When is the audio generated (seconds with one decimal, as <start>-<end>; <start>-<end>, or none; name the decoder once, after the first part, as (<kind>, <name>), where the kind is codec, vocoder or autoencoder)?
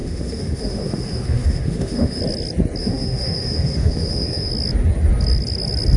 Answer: 0.0-2.2 (autoencoder, DAC-VAE); 2.8-4.5